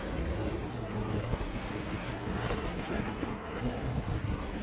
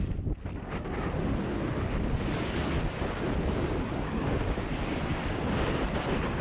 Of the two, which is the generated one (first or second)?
first